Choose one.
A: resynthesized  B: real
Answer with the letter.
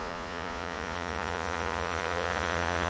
A